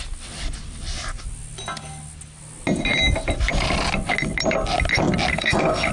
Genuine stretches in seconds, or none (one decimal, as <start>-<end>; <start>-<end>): 0.0-5.3